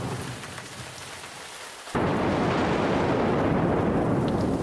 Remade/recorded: recorded